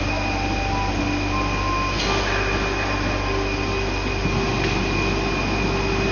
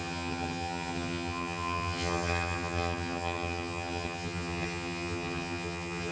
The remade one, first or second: second